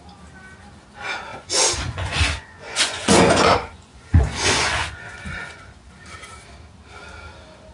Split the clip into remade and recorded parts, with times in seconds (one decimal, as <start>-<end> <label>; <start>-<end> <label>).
0.0-1.3 recorded; 1.3-5.9 remade; 5.9-7.7 recorded